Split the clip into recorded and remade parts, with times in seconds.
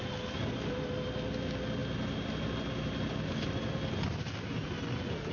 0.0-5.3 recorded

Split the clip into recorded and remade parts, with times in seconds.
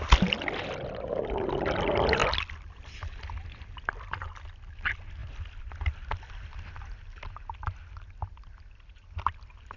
0.0-9.8 recorded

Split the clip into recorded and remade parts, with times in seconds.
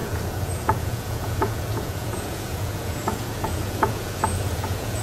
0.0-5.0 remade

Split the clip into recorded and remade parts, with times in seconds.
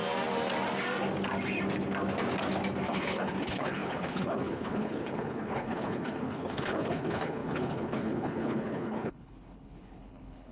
0.0-2.9 recorded; 2.9-10.5 remade